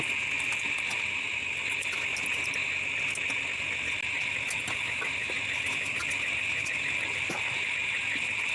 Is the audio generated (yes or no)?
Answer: no